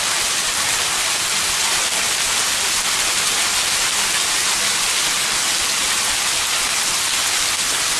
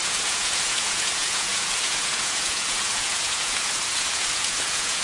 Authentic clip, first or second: first